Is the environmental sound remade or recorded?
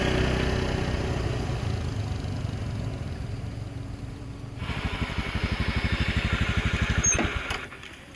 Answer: recorded